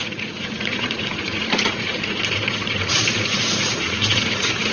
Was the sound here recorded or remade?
remade